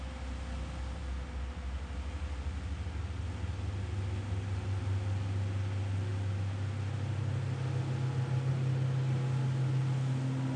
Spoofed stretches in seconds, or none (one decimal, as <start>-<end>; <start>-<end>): none